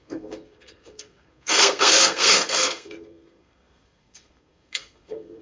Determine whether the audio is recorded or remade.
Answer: remade